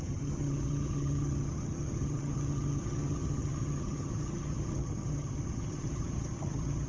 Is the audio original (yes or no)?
no